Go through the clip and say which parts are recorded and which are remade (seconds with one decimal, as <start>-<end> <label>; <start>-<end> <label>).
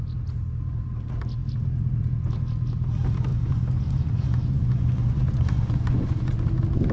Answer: 0.0-3.3 recorded; 3.3-6.5 remade; 6.5-6.9 recorded